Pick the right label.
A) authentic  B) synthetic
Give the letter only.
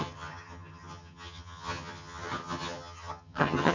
B